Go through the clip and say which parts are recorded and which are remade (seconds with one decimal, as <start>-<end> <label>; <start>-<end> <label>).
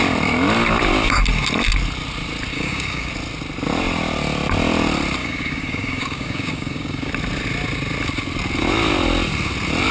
0.0-2.5 recorded; 2.5-3.1 remade; 3.1-5.2 recorded; 5.2-7.1 remade; 7.1-9.9 recorded